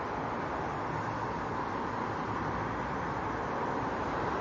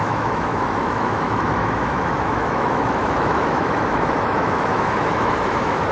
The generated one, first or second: second